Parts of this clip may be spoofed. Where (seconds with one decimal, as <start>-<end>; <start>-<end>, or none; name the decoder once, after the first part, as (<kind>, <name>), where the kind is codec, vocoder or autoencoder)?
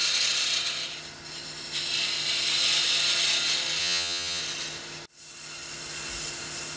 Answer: 3.8-4.4 (vocoder, HiFi-GAN)